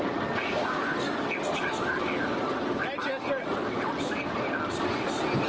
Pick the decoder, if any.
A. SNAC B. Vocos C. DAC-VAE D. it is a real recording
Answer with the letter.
D